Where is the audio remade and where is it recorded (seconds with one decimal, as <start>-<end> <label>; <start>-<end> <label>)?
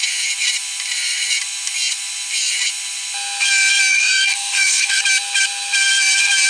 0.0-3.9 recorded; 3.9-5.0 remade; 5.0-6.5 recorded